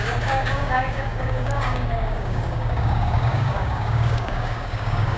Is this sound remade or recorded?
remade